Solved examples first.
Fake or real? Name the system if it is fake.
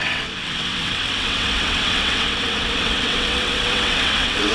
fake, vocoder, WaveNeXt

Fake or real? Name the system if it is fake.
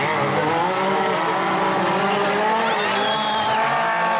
real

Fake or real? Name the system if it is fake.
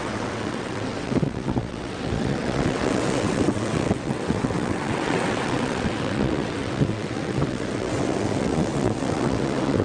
fake, vocoder, WaveNeXt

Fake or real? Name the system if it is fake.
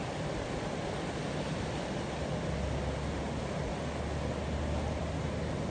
real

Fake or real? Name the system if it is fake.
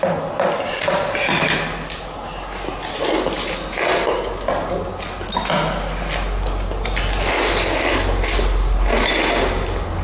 real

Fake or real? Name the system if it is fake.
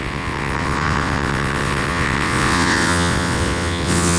fake, vocoder, WaveNeXt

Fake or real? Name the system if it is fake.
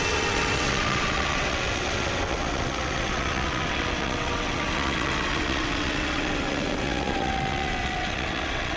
fake, vocoder, WaveNeXt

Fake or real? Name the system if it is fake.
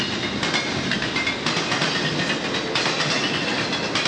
real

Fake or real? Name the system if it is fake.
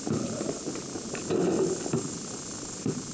real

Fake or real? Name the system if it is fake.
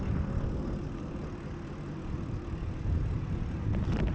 real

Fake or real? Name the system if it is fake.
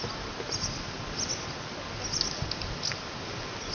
real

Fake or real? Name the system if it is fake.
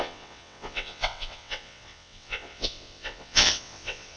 fake, vocoder, WaveNeXt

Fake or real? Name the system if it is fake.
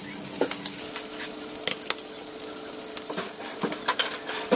real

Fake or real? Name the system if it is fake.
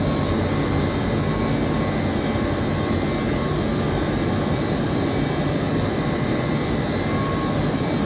real